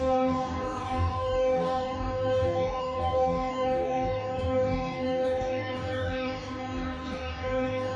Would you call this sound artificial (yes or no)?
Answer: yes